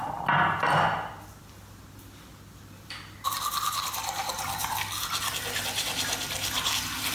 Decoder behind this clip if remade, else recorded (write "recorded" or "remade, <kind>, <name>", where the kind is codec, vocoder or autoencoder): recorded